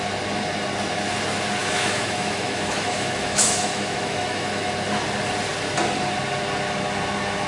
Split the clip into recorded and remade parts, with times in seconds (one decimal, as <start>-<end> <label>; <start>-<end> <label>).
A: 0.0-1.6 recorded; 1.6-4.7 remade; 4.7-7.5 recorded